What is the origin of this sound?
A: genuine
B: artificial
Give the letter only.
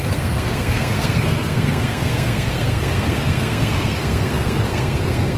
B